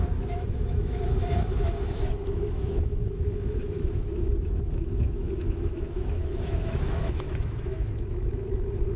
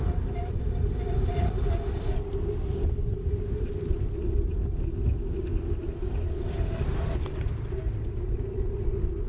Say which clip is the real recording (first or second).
second